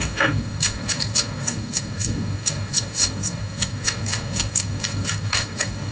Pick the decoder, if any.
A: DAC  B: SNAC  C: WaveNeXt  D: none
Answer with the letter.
A